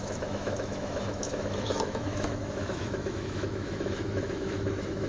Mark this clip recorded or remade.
remade